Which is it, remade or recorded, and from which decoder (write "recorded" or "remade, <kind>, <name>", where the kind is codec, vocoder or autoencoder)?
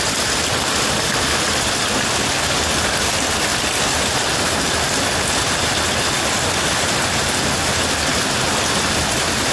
recorded